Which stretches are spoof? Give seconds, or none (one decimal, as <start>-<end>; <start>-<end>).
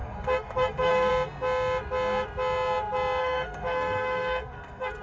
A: 0.0-1.1; 3.2-5.0